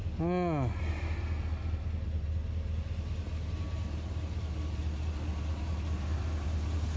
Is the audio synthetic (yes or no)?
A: no